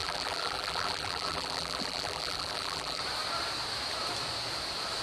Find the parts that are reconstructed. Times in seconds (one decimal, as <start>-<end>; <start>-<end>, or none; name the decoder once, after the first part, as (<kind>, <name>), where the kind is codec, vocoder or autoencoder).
0.0-3.0 (vocoder, BigVGAN v2)

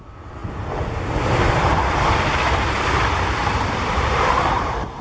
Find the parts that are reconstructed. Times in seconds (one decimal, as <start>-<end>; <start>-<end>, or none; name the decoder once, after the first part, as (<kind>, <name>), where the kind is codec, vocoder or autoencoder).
3.4-4.6 (vocoder, BigVGAN v2)

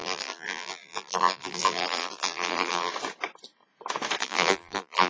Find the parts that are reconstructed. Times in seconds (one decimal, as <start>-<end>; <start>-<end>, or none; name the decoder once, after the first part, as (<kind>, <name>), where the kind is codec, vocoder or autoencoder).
0.0-2.9 (vocoder, BigVGAN v2); 4.2-5.1

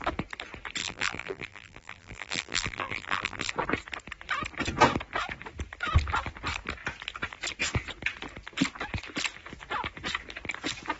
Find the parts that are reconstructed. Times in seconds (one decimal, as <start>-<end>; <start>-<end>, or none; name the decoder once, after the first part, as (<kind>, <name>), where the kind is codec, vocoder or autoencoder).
0.8-3.5 (vocoder, BigVGAN v2)

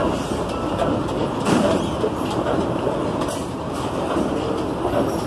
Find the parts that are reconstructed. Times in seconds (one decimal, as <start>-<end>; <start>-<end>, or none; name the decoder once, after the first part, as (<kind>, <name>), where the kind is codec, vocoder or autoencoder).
1.2-3.6 (vocoder, BigVGAN v2)

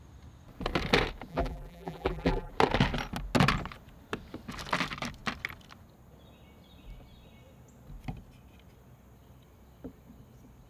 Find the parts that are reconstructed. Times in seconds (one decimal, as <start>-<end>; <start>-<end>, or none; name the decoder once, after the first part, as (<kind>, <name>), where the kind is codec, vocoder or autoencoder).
1.3-2.5 (vocoder, BigVGAN v2)